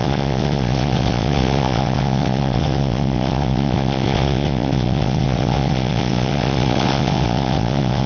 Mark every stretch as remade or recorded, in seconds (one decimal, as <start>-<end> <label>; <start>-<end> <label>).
0.0-8.1 remade